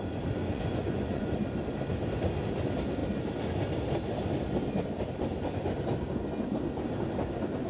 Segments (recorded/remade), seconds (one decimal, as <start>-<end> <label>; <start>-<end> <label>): 0.0-0.4 recorded; 0.4-1.3 remade; 1.3-7.7 recorded